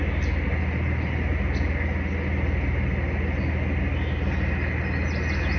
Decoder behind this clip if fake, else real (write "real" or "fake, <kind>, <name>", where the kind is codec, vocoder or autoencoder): real